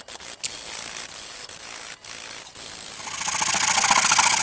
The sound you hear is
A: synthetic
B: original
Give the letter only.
B